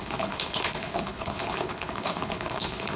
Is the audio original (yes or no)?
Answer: no